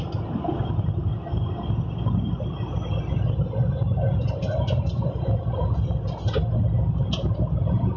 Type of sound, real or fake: real